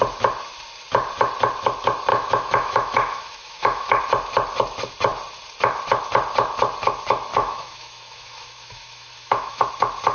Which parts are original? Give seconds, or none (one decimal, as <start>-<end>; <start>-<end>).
0.0-2.1; 4.0-7.3; 9.7-10.1